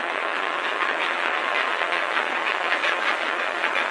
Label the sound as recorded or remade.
remade